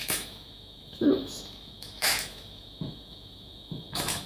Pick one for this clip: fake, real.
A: fake